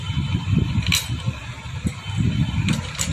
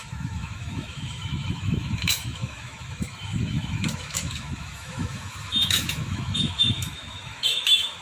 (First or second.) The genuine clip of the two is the first